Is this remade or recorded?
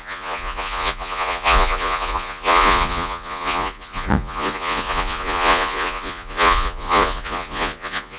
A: remade